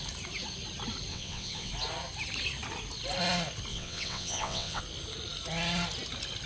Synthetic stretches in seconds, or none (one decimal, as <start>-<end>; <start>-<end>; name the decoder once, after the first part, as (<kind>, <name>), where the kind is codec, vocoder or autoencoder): 1.1-1.7 (vocoder, WaveNeXt); 3.7-4.8